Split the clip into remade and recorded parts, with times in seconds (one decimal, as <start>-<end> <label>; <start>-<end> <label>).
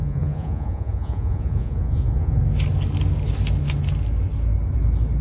0.0-2.4 remade; 2.4-5.2 recorded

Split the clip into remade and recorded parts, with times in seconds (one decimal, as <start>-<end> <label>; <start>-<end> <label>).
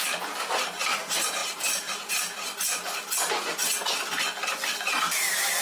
0.0-1.4 recorded; 1.4-2.1 remade; 2.1-5.6 recorded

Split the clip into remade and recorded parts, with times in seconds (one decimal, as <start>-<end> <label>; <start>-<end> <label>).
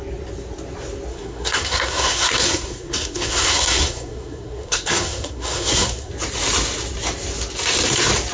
0.0-1.1 recorded; 1.1-6.1 remade; 6.1-8.3 recorded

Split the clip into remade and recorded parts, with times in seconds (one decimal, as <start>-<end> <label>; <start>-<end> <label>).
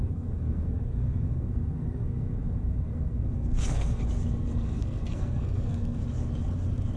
0.0-4.0 remade; 4.0-4.5 recorded; 4.5-6.0 remade; 6.0-7.0 recorded